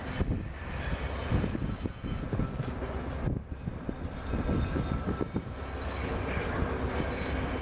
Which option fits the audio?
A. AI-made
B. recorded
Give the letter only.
B